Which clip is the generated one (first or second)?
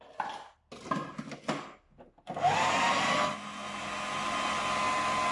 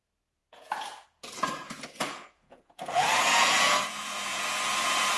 second